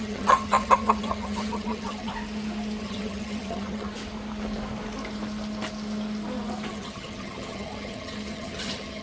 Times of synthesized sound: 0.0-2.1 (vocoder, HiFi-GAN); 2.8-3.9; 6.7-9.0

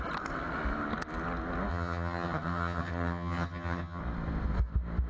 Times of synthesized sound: 1.7-4.0 (vocoder, HiFi-GAN)

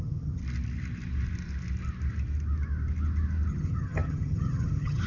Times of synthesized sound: 0.0-0.4 (vocoder, HiFi-GAN); 3.5-5.1

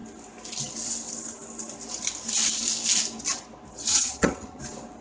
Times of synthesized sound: 3.9-4.6 (vocoder, HiFi-GAN)

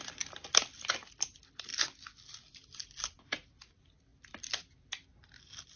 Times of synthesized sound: none

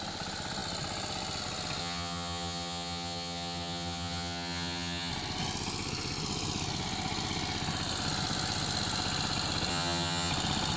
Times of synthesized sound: 1.8-5.1 (vocoder, HiFi-GAN); 9.7-10.3

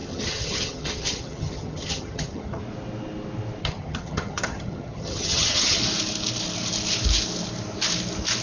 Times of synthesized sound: 0.0-2.6 (vocoder, HiFi-GAN); 3.6-5.8

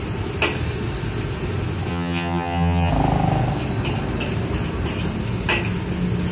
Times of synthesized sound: 1.9-2.9 (vocoder, HiFi-GAN)